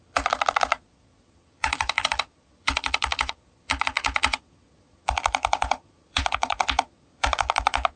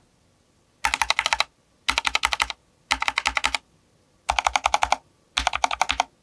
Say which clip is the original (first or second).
second